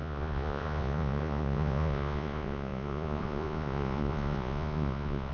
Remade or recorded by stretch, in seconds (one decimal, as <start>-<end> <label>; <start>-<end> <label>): 0.0-5.3 remade